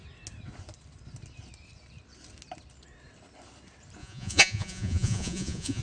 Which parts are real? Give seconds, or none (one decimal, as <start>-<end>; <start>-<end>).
0.0-4.0